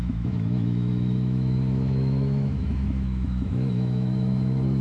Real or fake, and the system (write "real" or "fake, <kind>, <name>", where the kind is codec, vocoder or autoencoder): fake, autoencoder, DAC-VAE